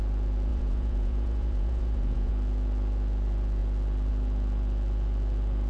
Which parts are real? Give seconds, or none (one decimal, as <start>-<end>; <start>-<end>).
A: 0.0-0.5; 2.3-5.7